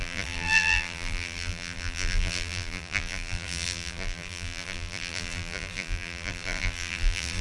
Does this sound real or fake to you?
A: fake